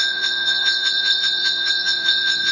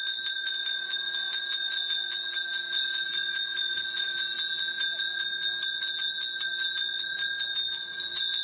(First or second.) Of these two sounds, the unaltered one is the second